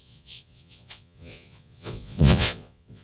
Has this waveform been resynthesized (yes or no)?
yes